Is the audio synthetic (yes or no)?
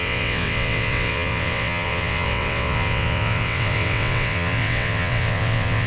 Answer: yes